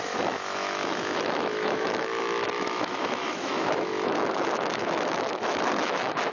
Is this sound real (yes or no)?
no